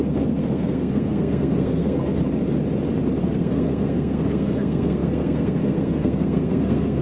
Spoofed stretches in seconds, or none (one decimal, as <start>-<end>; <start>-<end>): 0.0-2.0; 3.2-7.0